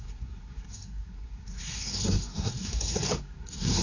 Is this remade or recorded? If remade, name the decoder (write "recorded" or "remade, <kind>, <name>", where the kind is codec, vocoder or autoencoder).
remade, codec, SNAC